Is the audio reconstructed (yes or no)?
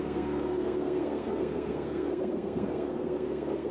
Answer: yes